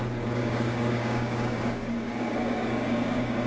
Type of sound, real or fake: fake